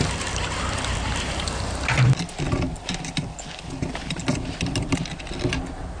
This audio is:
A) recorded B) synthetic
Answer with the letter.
A